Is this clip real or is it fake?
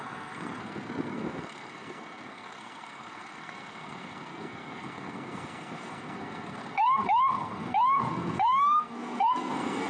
fake